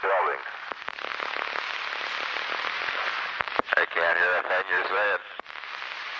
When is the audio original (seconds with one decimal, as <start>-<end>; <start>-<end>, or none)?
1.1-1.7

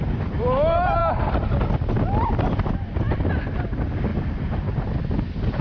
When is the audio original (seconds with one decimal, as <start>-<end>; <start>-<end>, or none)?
0.0-5.6

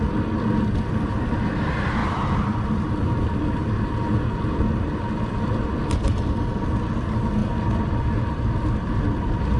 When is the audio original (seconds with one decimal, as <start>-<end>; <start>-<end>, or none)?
0.0-2.0; 3.9-7.4